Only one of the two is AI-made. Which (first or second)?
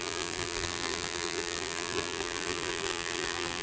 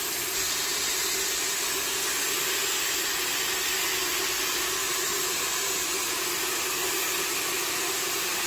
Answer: first